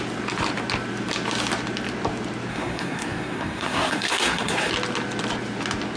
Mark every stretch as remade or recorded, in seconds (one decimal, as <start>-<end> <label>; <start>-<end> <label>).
0.0-2.5 recorded; 2.5-4.7 remade; 4.7-6.0 recorded